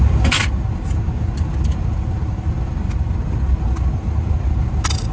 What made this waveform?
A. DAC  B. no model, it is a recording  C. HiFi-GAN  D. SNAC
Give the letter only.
B